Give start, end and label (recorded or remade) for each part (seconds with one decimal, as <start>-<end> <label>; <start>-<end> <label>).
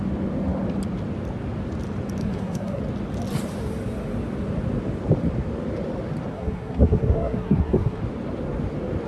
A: 0.0-2.2 recorded; 2.2-2.8 remade; 2.8-6.3 recorded; 6.3-8.0 remade; 8.0-9.1 recorded